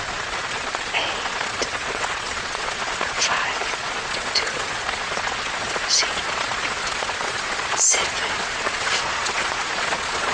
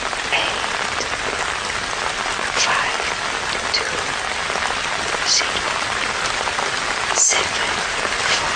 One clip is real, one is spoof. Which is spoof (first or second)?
first